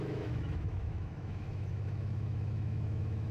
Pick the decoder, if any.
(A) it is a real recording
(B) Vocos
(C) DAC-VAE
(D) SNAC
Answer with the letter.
C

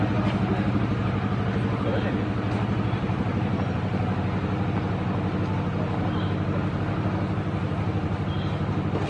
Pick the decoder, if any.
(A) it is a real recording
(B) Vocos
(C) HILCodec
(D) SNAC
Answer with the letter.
A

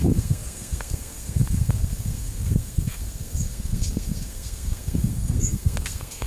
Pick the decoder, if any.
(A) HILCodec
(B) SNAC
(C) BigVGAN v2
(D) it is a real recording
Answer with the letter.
B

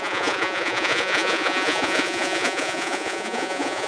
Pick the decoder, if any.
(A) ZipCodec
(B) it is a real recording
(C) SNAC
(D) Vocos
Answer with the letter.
D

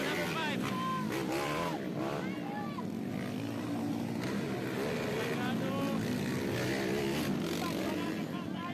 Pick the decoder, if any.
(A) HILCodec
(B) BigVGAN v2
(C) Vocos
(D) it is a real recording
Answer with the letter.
D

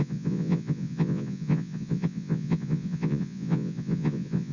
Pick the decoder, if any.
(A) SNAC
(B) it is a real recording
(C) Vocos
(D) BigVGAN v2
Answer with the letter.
C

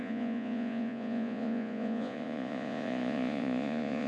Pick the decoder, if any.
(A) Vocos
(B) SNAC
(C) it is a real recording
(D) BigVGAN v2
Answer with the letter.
A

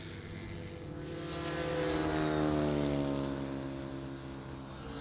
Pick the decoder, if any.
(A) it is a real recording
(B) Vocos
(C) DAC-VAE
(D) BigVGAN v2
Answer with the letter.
A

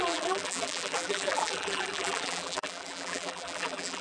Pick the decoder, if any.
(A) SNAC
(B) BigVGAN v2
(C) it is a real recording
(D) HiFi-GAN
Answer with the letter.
B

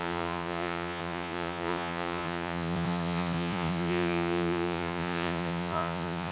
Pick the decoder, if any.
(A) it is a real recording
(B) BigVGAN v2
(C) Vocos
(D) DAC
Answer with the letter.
C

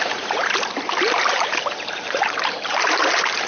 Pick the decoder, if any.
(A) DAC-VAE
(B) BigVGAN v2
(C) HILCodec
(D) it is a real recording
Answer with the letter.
B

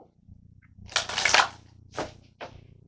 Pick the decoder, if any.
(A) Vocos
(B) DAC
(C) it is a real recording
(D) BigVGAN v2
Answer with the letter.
C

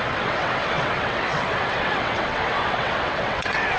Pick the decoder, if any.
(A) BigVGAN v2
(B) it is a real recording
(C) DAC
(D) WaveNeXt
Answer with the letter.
D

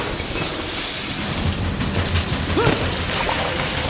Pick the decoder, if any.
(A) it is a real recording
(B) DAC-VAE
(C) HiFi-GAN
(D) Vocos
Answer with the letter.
A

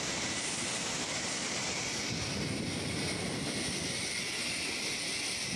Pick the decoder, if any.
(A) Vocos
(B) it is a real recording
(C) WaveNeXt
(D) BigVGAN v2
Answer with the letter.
B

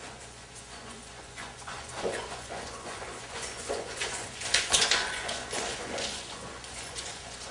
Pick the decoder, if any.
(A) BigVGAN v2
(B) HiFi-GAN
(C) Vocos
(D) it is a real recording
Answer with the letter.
C